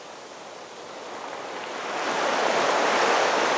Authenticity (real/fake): real